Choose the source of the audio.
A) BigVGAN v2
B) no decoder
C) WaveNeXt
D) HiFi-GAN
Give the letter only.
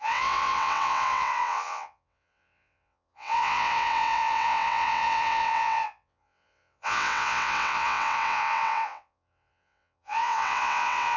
C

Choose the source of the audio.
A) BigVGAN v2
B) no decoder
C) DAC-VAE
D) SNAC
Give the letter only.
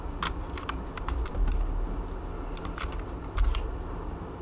B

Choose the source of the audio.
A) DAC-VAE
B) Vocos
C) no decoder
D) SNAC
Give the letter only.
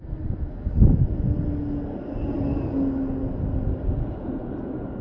C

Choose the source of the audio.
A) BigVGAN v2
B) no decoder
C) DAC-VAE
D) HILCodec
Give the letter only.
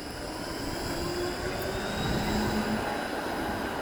B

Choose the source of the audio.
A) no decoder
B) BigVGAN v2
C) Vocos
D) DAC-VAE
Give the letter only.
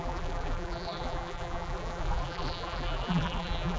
B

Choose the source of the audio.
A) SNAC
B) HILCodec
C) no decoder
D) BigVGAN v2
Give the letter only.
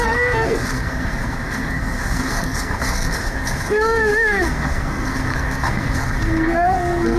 A